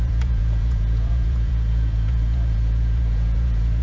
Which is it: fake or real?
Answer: fake